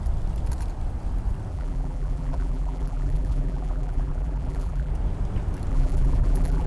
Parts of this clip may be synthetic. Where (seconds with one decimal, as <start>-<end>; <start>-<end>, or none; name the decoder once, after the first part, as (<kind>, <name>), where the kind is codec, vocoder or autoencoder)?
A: 1.5-4.9 (vocoder, BigVGAN v2); 5.7-6.7